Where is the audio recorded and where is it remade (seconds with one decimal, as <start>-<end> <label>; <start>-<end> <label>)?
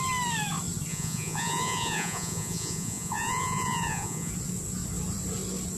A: 0.0-0.9 recorded; 0.9-4.3 remade; 4.3-5.8 recorded